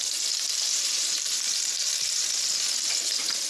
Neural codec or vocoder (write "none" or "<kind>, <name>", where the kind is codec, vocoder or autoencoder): vocoder, BigVGAN v2